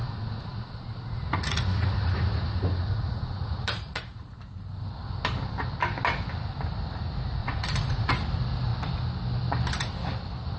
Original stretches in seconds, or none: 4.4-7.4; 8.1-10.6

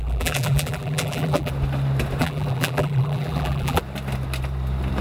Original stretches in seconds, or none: 1.5-2.2; 3.8-5.0

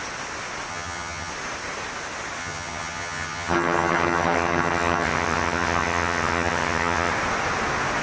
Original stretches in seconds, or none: 0.0-0.7; 1.3-2.4; 7.1-8.0

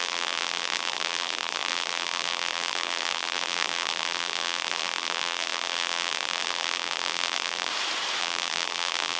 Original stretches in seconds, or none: 7.7-8.2

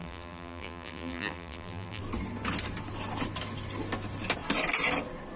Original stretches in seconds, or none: 2.0-5.4

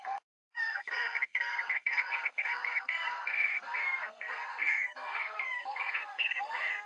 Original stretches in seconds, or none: none